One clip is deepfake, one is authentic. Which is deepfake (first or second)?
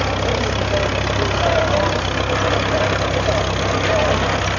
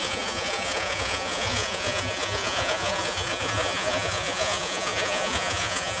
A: second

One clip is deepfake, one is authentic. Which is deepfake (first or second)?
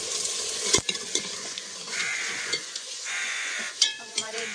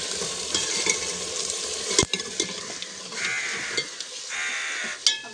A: first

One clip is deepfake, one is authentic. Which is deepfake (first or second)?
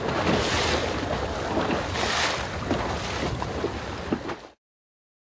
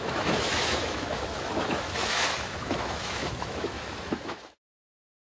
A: second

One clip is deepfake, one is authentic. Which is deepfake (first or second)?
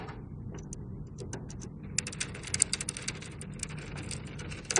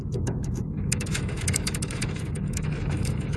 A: second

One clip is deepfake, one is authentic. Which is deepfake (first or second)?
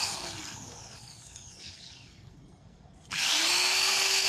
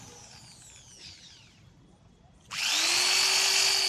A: first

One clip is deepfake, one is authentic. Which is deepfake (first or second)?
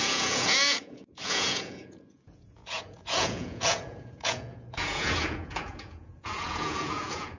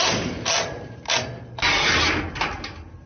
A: first